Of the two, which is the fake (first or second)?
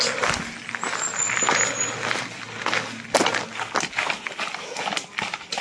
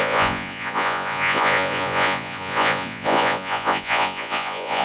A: second